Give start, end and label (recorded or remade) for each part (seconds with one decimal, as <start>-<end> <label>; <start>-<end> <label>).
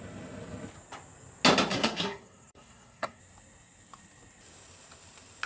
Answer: 0.0-1.7 recorded; 1.7-3.2 remade; 3.2-5.5 recorded